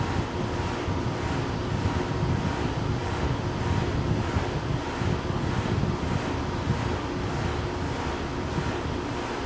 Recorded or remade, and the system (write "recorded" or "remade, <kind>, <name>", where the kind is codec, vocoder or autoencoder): recorded